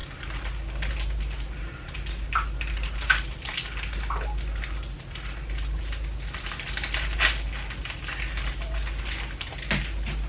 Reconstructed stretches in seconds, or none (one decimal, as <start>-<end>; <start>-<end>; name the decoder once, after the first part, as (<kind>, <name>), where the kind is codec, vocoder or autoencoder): none